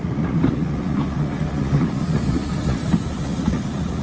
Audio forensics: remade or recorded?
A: remade